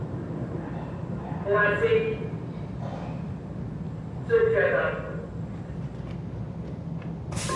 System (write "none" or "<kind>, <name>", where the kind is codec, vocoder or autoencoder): none